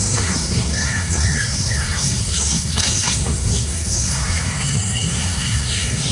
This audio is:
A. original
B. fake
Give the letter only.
B